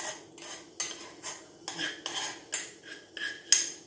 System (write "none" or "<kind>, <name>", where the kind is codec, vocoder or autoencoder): none